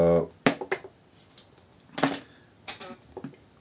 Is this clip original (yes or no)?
yes